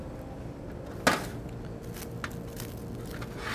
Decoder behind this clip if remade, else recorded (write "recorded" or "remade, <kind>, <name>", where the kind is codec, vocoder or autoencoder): recorded